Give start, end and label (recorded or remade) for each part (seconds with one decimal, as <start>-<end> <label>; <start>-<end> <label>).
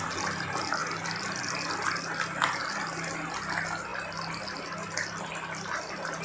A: 0.0-6.2 recorded